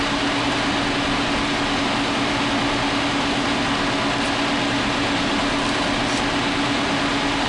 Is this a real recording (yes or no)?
yes